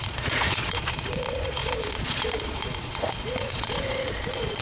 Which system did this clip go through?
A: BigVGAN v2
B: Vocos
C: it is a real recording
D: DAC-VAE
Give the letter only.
B